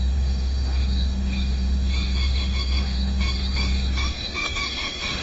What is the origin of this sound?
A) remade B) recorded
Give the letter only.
A